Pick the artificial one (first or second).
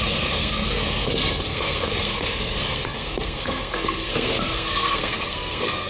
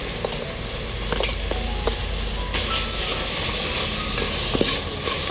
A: first